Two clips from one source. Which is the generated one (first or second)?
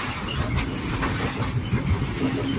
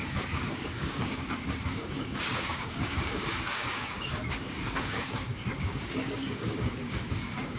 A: second